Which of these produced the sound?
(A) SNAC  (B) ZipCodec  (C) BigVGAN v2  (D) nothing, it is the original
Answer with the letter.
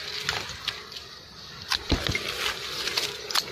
D